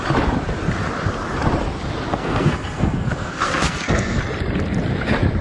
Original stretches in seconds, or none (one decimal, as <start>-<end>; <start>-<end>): 0.0-2.1; 4.2-5.4